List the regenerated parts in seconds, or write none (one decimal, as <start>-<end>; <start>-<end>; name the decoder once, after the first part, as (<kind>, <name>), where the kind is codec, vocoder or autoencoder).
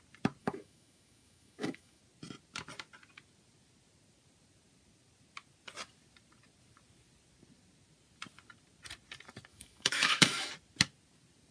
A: 0.4-2.0 (autoencoder, DAC-VAE); 9.5-10.5